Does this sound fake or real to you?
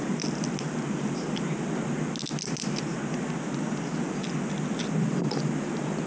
real